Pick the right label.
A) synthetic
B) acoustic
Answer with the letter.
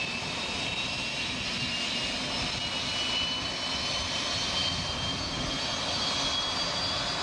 B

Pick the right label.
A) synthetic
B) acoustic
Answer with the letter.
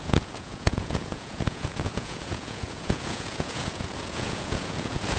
A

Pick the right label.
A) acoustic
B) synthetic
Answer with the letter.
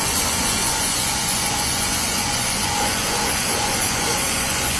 B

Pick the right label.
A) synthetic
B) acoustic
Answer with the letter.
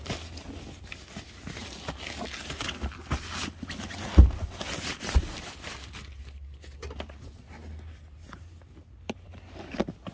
B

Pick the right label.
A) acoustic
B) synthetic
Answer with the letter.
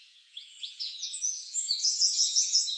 B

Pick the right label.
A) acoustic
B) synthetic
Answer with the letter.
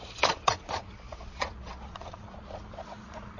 B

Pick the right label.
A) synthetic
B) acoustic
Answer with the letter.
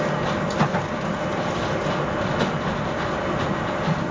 B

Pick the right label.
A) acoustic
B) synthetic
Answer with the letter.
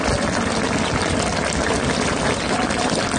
A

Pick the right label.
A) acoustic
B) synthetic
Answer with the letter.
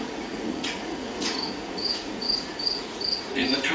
B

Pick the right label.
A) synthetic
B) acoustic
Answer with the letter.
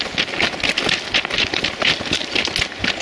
B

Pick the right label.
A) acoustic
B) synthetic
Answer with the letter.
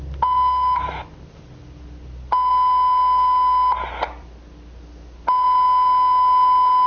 A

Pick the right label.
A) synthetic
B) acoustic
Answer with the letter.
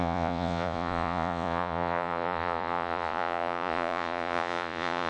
A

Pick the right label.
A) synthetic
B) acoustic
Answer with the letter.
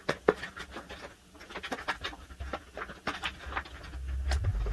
B